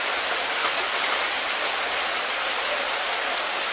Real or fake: fake